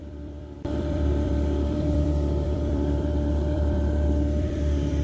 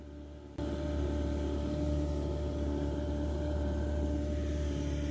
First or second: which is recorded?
second